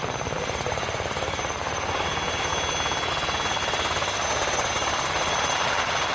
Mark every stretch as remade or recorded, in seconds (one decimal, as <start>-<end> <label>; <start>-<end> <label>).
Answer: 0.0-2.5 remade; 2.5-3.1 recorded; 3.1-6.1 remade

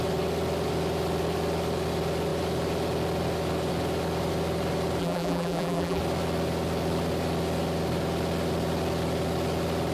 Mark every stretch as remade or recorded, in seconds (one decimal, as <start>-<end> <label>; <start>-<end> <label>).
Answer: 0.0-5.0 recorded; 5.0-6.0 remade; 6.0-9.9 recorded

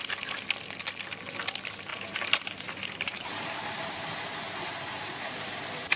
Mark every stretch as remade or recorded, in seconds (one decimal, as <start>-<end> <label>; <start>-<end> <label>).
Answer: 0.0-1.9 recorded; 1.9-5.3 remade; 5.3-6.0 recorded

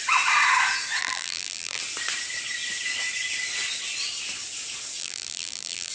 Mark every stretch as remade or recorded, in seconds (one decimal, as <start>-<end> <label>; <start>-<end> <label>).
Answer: 0.0-1.0 recorded; 1.0-1.8 remade; 1.8-5.0 recorded; 5.0-5.9 remade